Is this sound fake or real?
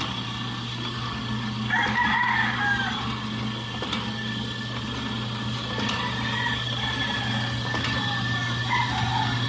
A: real